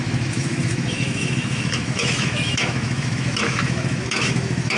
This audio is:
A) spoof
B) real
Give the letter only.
A